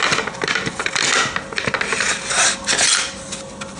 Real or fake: real